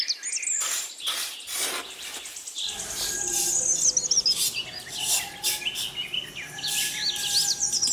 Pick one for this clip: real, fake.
real